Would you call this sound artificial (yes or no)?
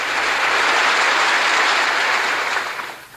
yes